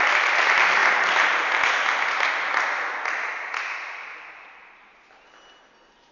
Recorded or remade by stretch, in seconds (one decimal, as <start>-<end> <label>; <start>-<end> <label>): 0.0-6.1 recorded